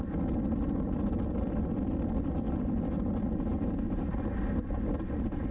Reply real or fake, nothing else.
real